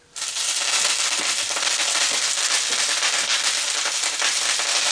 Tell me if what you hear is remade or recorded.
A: recorded